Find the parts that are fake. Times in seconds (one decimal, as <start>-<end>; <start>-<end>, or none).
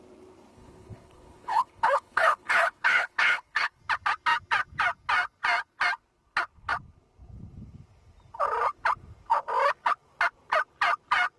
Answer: 0.5-3.8